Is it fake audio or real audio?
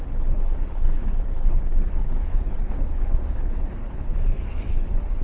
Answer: fake